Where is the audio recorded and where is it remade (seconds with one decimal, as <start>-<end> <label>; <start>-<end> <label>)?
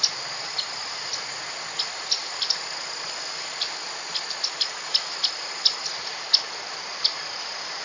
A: 0.0-7.8 recorded